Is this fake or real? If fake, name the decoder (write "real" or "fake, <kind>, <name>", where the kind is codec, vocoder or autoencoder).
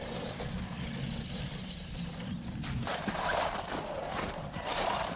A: fake, vocoder, BigVGAN v2